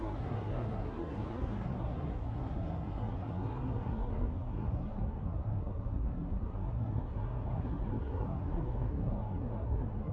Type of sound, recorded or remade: remade